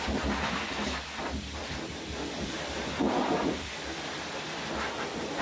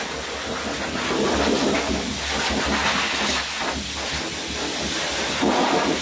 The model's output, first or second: first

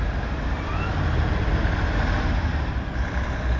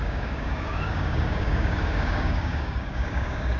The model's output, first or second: second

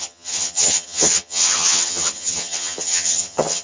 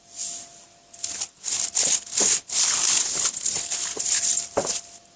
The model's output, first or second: first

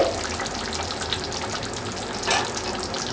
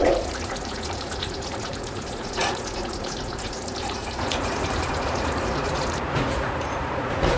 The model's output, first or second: second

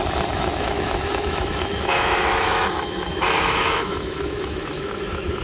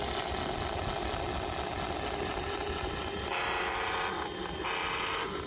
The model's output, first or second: first